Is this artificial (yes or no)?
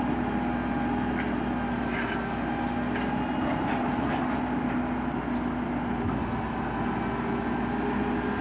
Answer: no